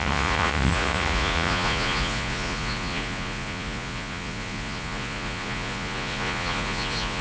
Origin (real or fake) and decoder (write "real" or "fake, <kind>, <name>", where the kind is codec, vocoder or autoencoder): fake, vocoder, Vocos